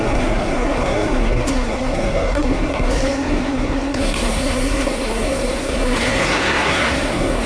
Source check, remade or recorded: remade